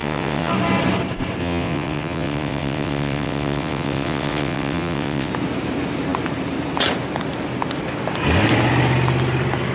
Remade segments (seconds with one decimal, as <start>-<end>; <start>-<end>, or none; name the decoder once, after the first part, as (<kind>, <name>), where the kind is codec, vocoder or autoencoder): 0.0-0.5 (vocoder, WaveNeXt); 1.4-5.3